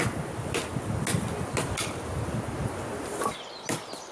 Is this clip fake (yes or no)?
no